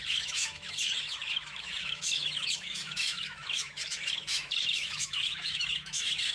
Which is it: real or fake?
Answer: fake